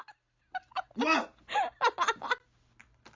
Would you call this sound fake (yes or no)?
no